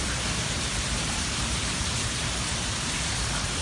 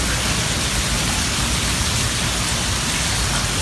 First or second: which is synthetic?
first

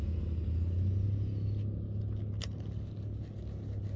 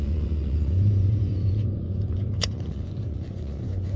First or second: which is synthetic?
second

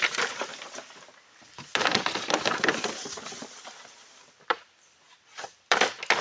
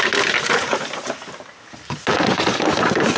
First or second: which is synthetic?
first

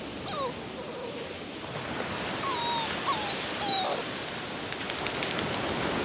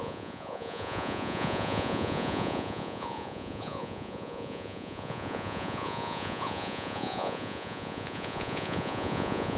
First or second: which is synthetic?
second